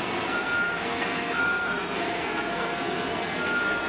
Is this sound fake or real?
fake